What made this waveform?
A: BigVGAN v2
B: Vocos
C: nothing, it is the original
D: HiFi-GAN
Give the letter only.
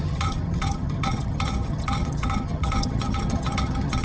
D